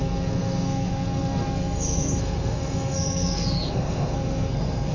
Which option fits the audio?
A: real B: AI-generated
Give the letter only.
B